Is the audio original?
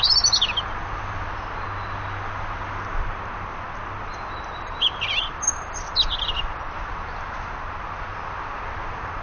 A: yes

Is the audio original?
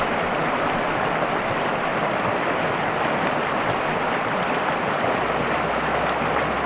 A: yes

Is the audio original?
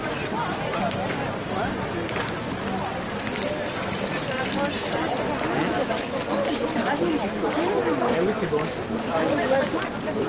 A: yes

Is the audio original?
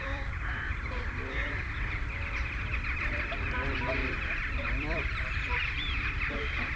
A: no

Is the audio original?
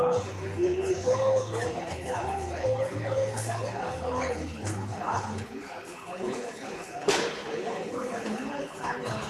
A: no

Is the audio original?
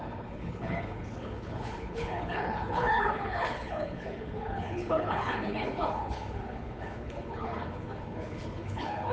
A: no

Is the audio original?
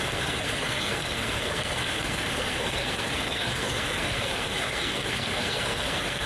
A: no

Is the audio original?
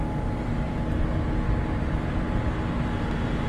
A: yes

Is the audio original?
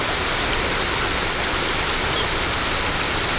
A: yes